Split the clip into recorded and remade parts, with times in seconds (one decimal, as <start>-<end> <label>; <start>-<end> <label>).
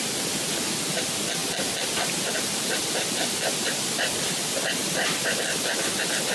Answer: 0.0-4.8 recorded; 4.8-5.4 remade; 5.4-6.3 recorded